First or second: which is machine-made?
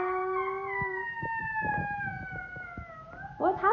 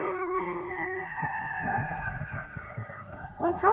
second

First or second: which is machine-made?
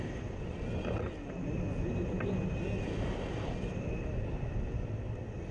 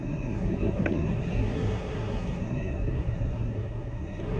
second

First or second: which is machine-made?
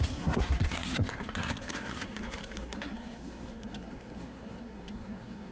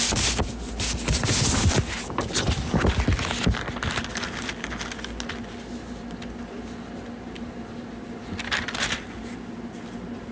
first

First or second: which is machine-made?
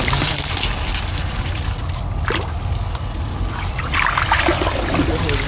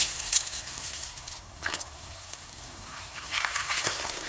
second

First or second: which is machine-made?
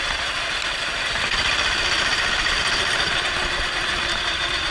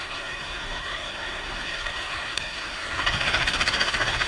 second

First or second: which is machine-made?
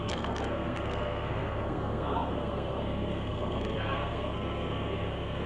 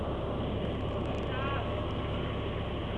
first